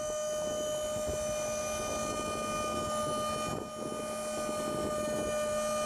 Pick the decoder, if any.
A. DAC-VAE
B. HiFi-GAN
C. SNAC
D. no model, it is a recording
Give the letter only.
D